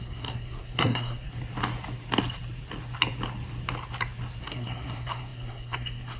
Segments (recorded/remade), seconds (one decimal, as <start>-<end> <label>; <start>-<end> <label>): 0.0-1.3 remade; 1.3-4.4 recorded; 4.4-6.2 remade